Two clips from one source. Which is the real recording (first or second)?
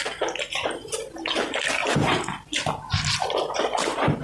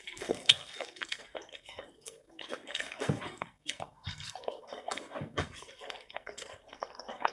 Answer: first